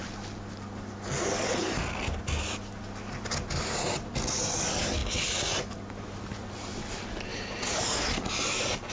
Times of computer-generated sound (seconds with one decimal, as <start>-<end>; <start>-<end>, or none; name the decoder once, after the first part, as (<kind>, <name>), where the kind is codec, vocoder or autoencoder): none